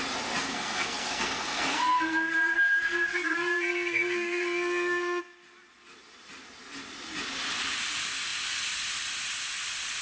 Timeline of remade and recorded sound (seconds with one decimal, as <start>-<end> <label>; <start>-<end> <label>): 0.0-0.4 recorded; 0.4-5.2 remade; 5.2-10.0 recorded